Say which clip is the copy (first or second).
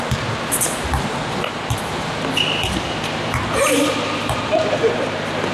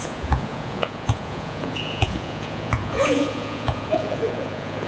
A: second